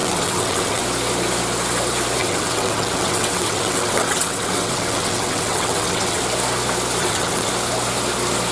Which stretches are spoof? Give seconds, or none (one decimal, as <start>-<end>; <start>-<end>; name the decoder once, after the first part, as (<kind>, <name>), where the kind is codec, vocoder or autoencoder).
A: 0.0-0.8 (vocoder, WaveNeXt); 2.2-6.2; 7.0-7.5

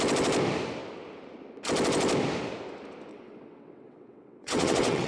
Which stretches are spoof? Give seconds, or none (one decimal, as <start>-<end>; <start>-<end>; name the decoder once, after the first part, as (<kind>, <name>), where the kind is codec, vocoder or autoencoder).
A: 3.1-5.1 (vocoder, WaveNeXt)

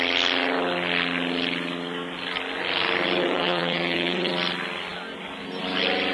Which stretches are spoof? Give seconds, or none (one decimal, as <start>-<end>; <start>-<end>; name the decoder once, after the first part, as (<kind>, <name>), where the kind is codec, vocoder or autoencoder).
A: 3.2-4.3 (vocoder, WaveNeXt)

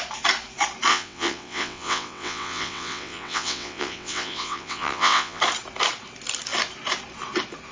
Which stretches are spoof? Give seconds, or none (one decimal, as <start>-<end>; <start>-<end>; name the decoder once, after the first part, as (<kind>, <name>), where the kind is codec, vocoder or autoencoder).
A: 0.9-5.4 (vocoder, WaveNeXt)

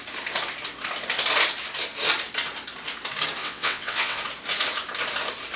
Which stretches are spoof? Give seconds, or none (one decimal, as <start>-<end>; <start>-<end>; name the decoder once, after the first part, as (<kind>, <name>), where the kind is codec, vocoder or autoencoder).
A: 3.4-4.2 (vocoder, WaveNeXt)

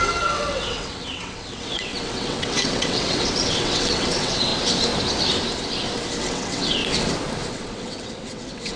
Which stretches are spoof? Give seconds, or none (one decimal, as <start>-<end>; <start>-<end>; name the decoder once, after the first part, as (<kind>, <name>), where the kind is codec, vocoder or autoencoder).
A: 0.0-4.5 (vocoder, WaveNeXt); 6.2-6.8; 7.5-8.8